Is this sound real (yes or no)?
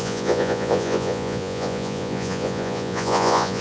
no